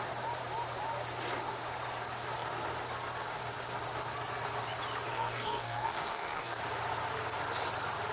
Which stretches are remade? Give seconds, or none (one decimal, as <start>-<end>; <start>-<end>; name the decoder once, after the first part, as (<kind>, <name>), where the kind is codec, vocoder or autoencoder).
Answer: 5.1-6.6 (codec, SNAC)